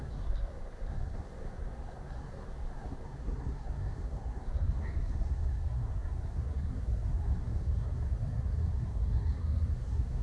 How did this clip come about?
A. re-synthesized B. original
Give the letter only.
A